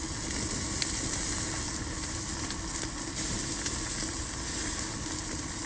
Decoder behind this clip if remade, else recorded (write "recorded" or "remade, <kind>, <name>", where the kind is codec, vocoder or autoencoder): recorded